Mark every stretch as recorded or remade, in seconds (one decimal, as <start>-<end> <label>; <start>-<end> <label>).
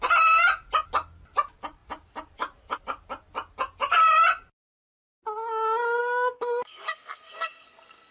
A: 0.0-6.0 recorded; 6.0-8.1 remade